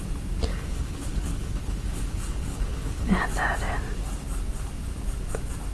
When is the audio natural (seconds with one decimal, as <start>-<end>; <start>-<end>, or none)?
0.0-0.5; 3.2-5.7